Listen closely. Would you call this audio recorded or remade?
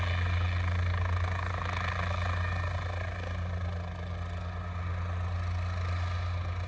recorded